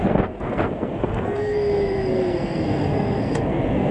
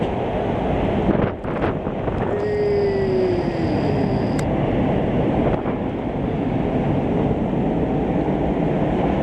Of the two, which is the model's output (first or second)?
first